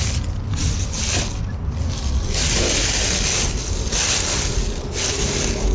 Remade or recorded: recorded